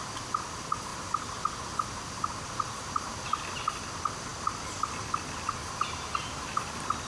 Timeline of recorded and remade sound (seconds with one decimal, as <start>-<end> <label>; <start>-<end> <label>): 0.0-7.1 recorded